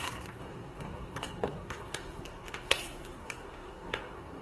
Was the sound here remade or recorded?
remade